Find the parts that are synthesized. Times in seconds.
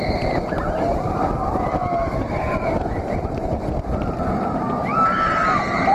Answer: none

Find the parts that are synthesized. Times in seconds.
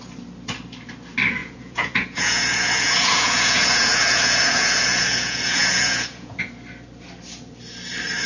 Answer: 1.4-6.4 (vocoder, Vocos)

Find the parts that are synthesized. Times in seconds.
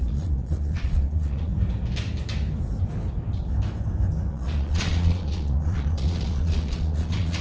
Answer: 0.0-1.5 (vocoder, Vocos); 4.3-7.4